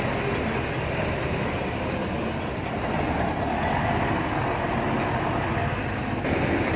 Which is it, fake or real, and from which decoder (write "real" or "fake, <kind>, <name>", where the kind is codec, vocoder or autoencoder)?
real